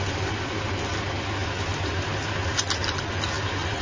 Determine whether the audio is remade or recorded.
recorded